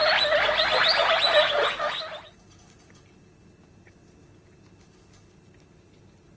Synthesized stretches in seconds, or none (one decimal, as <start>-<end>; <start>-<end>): none